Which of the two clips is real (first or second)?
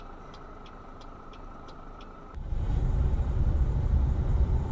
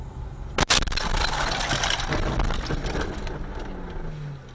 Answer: second